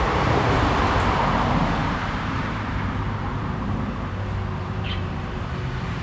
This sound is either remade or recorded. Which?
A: remade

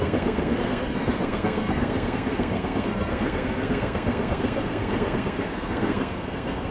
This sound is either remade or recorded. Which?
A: remade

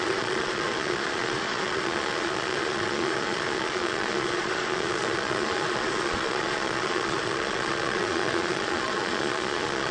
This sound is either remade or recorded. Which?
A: remade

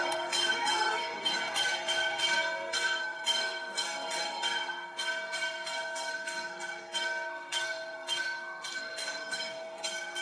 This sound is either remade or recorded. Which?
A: remade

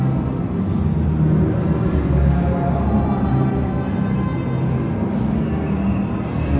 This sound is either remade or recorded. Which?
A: recorded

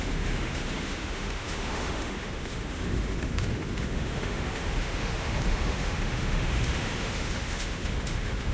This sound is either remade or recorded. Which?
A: remade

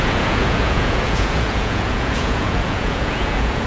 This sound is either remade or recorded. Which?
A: remade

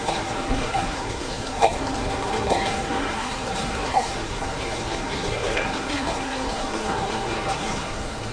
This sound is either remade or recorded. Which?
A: remade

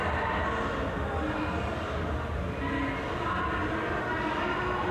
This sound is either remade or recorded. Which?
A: recorded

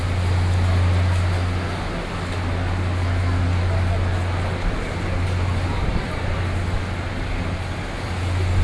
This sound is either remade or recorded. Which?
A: recorded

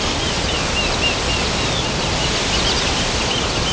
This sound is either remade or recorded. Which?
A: recorded